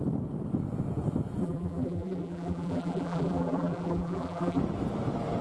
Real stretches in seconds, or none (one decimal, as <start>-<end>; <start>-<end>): 0.0-1.4; 4.6-5.4